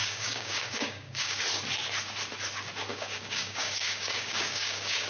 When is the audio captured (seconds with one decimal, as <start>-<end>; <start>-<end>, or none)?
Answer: 1.4-2.9